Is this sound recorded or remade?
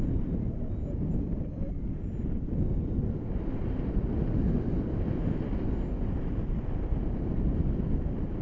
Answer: recorded